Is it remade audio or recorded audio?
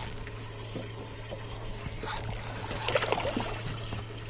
recorded